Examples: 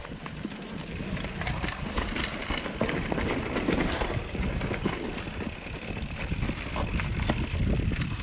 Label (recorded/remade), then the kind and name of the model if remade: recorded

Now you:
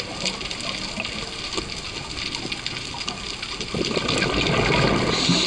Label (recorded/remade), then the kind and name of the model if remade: recorded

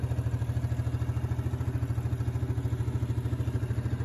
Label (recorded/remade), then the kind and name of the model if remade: recorded